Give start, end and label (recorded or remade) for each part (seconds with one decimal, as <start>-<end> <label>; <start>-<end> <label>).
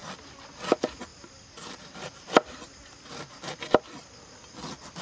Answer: 0.0-5.0 recorded